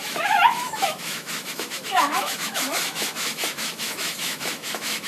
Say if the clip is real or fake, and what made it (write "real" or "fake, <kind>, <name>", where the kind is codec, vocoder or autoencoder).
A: fake, autoencoder, DAC-VAE